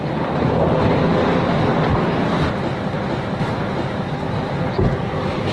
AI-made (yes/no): no